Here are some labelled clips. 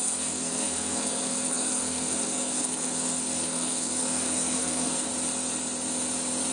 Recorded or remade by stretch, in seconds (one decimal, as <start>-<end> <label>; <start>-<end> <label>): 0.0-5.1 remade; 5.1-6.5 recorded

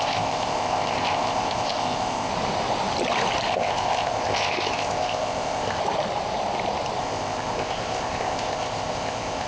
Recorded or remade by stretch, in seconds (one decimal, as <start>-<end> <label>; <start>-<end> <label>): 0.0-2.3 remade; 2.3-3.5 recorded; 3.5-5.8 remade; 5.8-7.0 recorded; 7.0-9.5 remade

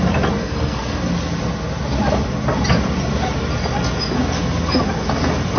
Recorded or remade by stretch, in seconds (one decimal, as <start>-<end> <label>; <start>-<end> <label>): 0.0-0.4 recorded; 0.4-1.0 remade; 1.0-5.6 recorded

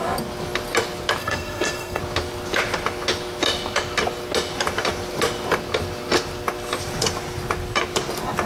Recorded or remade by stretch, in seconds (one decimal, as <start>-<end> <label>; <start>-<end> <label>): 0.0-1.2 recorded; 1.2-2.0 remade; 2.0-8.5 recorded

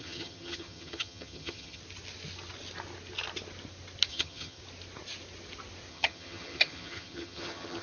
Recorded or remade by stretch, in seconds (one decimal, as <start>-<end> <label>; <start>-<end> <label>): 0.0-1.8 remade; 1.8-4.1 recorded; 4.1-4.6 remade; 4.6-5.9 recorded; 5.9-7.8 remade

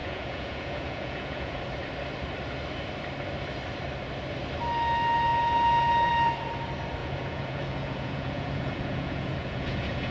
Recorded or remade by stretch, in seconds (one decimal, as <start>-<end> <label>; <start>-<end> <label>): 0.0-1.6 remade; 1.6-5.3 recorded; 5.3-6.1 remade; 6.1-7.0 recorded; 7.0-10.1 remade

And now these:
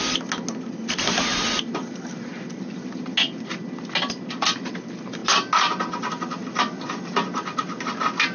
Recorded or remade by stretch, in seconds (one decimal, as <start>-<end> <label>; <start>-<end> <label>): 0.0-8.3 recorded